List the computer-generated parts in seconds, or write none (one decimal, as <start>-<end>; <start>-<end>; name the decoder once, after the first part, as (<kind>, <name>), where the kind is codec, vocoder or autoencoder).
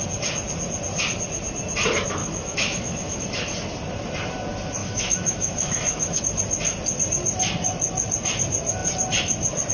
2.2-3.2 (autoencoder, DAC-VAE); 4.8-6.2